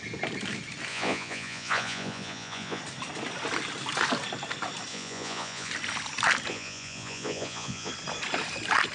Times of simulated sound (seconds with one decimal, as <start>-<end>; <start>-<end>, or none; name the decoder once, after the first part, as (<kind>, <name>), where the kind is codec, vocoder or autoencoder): 0.9-2.8 (vocoder, Vocos); 4.9-5.7; 6.5-7.9